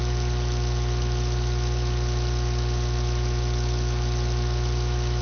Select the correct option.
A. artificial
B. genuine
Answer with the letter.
B